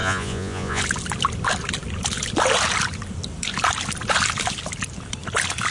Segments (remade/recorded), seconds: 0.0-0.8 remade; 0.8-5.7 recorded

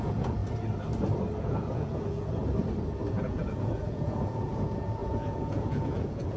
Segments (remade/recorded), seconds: 0.0-0.4 remade; 0.4-1.4 recorded; 1.4-2.4 remade; 2.4-3.1 recorded; 3.1-6.4 remade

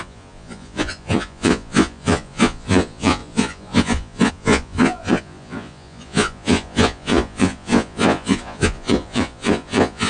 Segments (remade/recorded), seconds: 0.0-10.1 remade

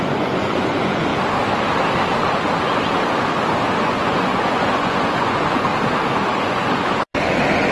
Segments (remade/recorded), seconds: 0.0-1.1 remade; 1.1-3.8 recorded; 3.8-5.7 remade; 5.7-6.4 recorded; 6.4-7.7 remade

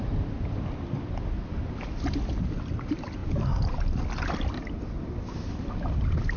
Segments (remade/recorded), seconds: 0.0-6.4 recorded

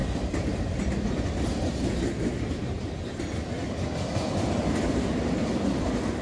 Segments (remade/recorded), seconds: 0.0-6.2 recorded